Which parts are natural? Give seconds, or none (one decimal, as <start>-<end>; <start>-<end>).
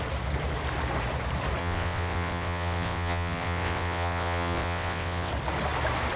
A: 0.0-1.6; 5.3-6.2